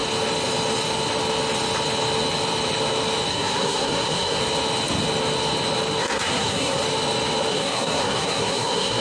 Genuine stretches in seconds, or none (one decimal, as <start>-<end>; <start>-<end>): 0.0-3.3; 4.4-6.0; 6.8-7.5